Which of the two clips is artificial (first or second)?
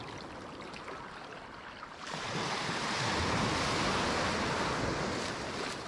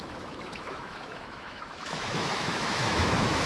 second